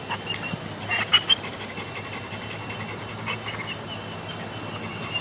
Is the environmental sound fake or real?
fake